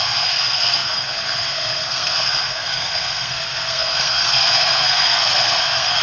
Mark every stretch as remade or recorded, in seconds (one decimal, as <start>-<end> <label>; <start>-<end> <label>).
0.0-6.0 remade